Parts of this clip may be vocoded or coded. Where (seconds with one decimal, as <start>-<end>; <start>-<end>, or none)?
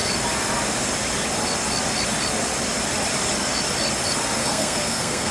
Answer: 4.4-5.3